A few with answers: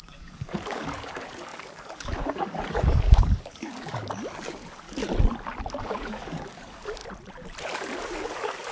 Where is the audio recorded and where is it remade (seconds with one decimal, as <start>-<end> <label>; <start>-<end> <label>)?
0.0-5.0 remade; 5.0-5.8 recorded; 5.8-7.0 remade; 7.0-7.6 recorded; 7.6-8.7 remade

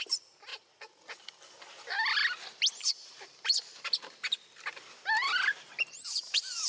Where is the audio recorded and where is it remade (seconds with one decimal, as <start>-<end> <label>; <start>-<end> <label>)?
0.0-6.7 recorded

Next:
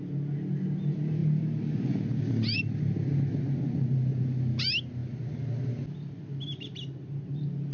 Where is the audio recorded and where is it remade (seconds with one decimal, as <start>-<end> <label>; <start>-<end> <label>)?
0.0-7.7 recorded

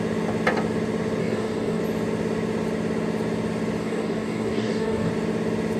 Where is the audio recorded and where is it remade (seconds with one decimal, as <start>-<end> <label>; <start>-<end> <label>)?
0.0-1.2 recorded; 1.2-1.8 remade; 1.8-3.8 recorded; 3.8-5.1 remade; 5.1-5.8 recorded